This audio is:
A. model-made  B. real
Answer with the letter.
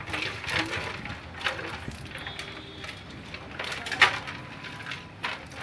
B